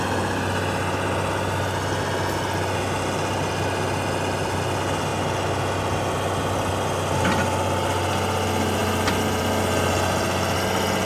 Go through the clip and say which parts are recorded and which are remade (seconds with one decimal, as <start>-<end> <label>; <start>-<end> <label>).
0.0-11.1 recorded